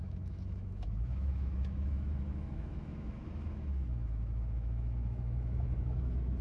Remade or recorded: remade